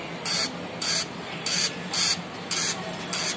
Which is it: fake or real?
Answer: real